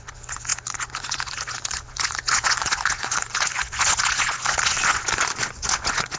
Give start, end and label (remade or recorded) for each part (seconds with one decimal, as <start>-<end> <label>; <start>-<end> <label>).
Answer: 0.0-6.2 remade